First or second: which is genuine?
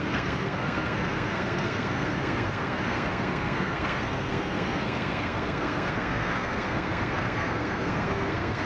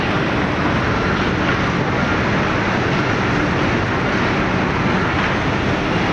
second